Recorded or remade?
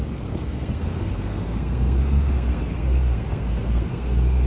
remade